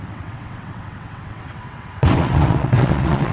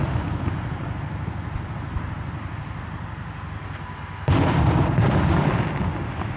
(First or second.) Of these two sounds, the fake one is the first